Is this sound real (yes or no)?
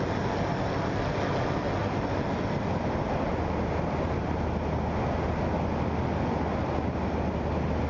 yes